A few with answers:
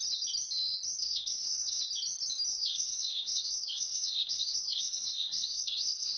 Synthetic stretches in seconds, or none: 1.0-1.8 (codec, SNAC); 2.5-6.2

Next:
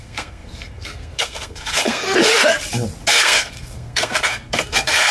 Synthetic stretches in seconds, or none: 0.0-2.2 (codec, SNAC); 3.1-5.1